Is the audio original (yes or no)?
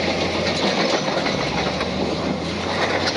yes